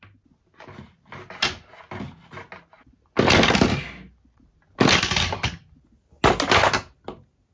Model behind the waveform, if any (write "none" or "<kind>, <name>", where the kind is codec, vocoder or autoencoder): none